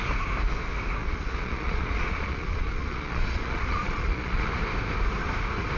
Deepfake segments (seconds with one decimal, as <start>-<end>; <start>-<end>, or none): 1.0-4.5